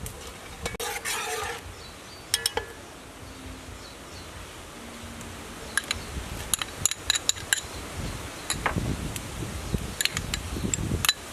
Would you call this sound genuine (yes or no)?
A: yes